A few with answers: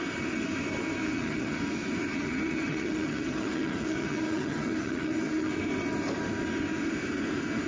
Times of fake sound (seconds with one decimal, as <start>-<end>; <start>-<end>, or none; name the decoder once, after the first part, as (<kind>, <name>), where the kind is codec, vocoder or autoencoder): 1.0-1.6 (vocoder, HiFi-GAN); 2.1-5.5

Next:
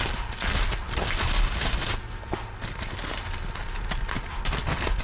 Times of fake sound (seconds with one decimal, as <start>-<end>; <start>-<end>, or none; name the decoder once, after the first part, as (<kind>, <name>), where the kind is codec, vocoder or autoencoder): none

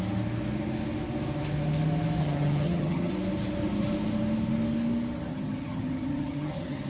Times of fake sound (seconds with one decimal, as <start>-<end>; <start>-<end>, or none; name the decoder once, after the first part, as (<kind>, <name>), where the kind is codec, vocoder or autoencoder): 2.2-3.1 (vocoder, HiFi-GAN); 5.3-6.9

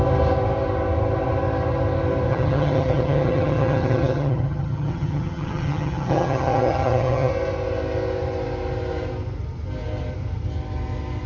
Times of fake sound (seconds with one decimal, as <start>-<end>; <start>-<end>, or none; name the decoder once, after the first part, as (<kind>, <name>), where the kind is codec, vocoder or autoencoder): 2.3-7.3 (vocoder, HiFi-GAN)

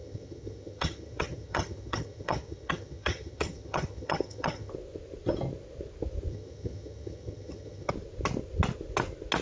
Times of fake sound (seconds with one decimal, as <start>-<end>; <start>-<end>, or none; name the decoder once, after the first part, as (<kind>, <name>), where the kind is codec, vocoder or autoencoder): 0.0-4.7 (vocoder, HiFi-GAN); 6.3-7.9